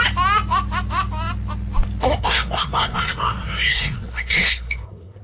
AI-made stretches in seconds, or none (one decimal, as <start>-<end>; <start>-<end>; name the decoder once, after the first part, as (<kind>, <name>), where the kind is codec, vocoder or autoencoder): 2.0-5.2 (codec, SNAC)

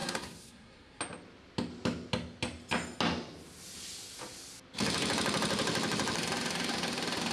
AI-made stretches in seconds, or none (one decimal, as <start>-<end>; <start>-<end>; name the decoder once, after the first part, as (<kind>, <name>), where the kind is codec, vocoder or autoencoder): 0.0-1.0 (codec, SNAC)

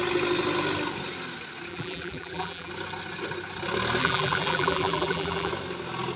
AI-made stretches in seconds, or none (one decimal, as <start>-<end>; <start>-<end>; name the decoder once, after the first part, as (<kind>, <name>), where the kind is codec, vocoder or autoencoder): 1.7-2.7 (vocoder, BigVGAN v2); 4.0-5.5

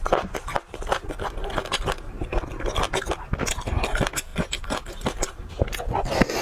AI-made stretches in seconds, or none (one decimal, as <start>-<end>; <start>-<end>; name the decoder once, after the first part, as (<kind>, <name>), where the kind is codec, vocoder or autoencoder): none

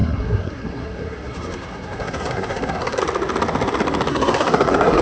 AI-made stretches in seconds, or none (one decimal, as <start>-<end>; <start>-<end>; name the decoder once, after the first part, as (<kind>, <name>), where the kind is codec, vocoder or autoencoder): 0.0-3.0 (codec, SNAC); 4.1-5.0

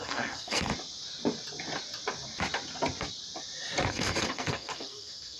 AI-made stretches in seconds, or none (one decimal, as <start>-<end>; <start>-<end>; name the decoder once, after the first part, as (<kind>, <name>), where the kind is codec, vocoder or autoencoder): 0.0-0.7 (codec, SNAC); 3.9-5.4

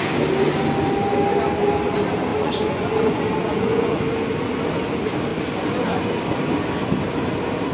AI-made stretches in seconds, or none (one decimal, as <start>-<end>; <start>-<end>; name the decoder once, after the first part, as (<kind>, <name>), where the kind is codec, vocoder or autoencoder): 2.3-4.0 (vocoder, Vocos)

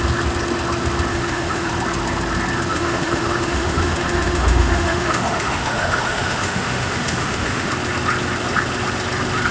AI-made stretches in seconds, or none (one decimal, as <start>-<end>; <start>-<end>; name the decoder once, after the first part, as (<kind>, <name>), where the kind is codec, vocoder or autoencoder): 1.1-1.7 (autoencoder, DAC-VAE); 2.7-7.7